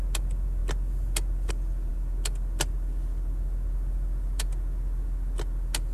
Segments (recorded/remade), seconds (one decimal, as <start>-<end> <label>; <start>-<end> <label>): 0.0-5.9 recorded